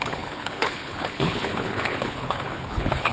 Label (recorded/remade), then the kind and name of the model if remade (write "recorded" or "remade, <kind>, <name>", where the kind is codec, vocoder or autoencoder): remade, codec, HILCodec